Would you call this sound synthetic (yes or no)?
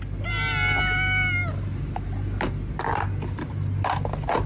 no